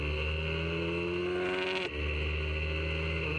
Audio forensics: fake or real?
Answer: real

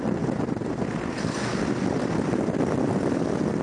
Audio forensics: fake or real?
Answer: real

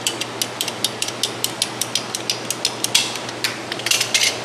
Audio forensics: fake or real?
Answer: real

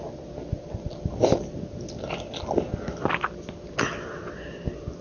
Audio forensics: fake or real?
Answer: real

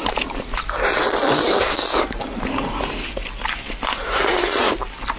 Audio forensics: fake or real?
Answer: real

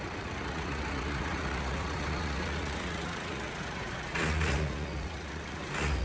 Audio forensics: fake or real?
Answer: fake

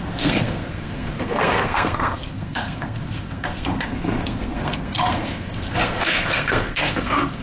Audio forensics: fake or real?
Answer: fake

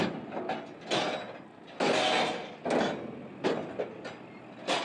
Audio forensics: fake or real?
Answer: real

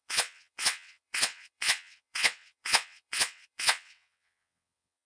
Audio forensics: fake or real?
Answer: fake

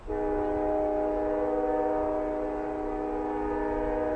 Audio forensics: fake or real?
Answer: real